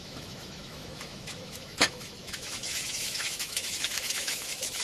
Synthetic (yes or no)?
yes